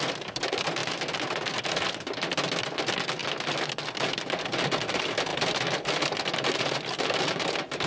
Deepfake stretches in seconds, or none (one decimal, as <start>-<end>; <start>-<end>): none